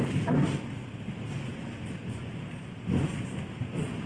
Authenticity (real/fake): real